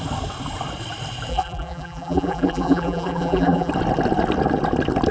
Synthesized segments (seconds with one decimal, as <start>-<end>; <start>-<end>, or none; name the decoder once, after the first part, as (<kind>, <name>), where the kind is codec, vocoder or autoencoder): 1.3-3.7 (vocoder, BigVGAN v2)